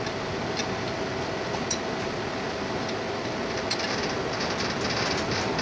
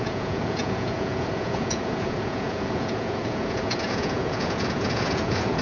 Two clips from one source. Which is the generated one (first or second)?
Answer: second